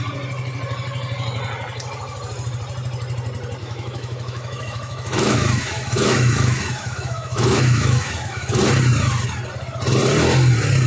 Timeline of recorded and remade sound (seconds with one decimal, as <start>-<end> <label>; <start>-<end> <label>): 0.0-3.6 recorded; 3.6-8.6 remade; 8.6-10.9 recorded